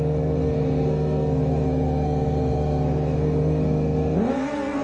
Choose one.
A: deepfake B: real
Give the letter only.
A